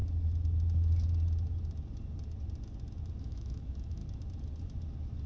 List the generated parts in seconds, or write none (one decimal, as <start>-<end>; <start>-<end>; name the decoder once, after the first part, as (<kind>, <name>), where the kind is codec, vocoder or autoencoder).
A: 3.2-4.0 (autoencoder, DAC-VAE)